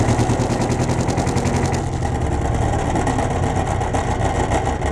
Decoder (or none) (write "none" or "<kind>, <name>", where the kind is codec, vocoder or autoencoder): none